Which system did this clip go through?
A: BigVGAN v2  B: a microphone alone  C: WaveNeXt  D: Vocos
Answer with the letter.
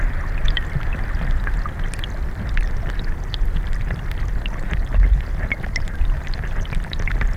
A